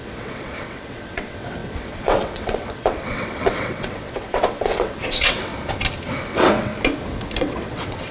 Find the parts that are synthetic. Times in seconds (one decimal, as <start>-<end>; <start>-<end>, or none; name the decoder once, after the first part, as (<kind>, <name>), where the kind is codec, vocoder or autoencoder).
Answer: 0.0-5.5 (vocoder, WaveNeXt); 6.3-6.7; 7.4-8.1